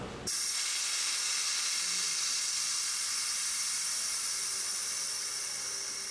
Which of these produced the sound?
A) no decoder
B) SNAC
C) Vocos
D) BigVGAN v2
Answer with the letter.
A